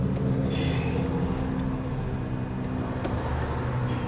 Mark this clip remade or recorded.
recorded